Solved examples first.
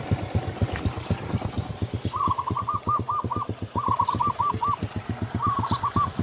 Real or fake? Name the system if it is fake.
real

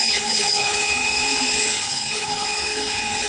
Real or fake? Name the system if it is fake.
fake, codec, HILCodec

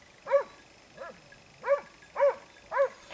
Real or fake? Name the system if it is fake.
real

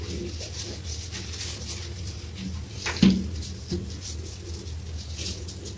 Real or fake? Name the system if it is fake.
real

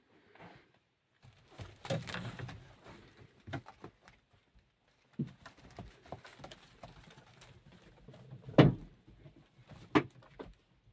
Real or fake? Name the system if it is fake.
real